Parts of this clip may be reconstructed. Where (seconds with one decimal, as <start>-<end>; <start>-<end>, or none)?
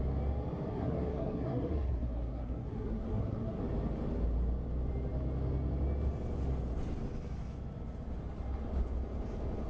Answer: 0.7-3.6